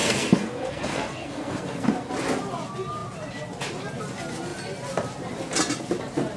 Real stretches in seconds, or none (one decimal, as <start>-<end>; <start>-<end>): 2.1-6.4